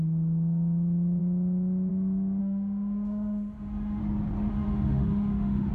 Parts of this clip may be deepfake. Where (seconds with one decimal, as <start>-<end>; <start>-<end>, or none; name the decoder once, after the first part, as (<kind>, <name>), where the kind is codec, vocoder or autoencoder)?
2.4-4.0 (autoencoder, DAC-VAE); 4.5-5.7